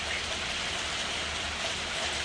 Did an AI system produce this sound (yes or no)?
no